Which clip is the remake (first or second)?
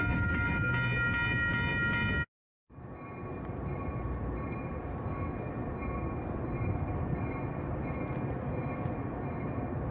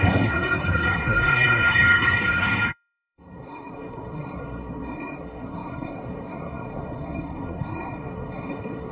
second